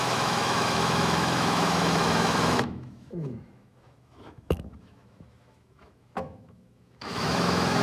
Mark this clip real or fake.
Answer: fake